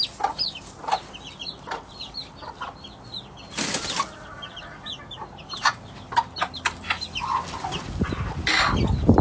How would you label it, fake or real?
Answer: real